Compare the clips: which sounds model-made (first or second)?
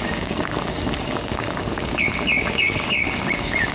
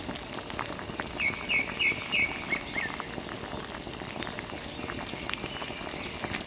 first